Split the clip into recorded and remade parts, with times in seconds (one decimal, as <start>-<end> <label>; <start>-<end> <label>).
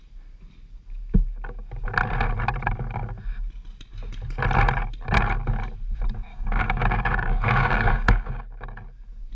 0.0-6.3 recorded; 6.3-8.4 remade; 8.4-9.3 recorded